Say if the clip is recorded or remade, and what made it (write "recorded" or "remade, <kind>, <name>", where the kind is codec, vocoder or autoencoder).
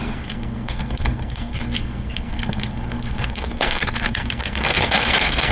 remade, codec, SNAC